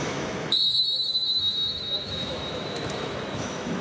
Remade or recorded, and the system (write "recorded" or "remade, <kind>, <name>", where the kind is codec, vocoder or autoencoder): remade, autoencoder, DAC-VAE